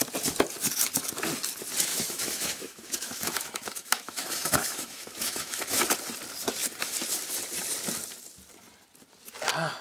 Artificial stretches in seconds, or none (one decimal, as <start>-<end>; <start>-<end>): 1.9-5.8